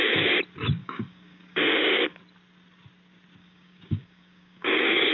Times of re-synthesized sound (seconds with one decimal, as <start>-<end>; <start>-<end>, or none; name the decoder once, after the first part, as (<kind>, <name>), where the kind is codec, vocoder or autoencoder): 0.8-2.2 (codec, DAC); 3.4-5.1